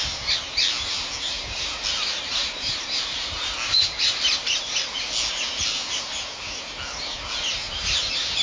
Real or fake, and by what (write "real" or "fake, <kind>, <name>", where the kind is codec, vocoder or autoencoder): real